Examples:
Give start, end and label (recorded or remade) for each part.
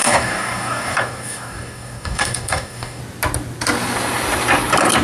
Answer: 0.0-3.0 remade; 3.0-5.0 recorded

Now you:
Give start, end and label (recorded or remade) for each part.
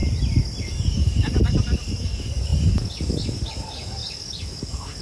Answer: 0.0-0.6 recorded; 0.6-5.0 remade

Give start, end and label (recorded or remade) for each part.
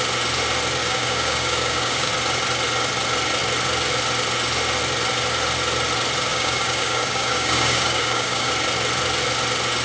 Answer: 0.0-0.8 recorded; 0.8-2.1 remade; 2.1-6.3 recorded; 6.3-8.5 remade; 8.5-9.8 recorded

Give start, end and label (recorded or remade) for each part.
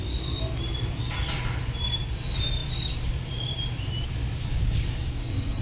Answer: 0.0-4.5 recorded; 4.5-5.6 remade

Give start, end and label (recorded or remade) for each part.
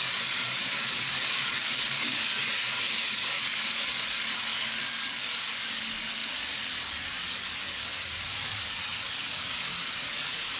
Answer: 0.0-10.6 remade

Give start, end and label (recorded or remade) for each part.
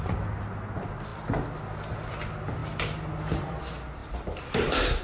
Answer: 0.0-5.0 recorded